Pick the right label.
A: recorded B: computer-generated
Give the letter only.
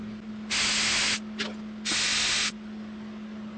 A